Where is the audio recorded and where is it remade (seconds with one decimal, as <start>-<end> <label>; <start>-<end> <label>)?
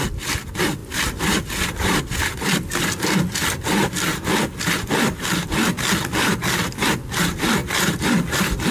0.0-8.7 recorded